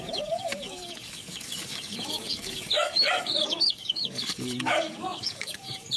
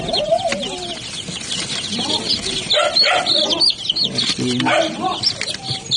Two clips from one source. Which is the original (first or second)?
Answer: second